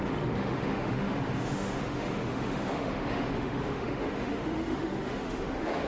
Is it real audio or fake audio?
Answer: fake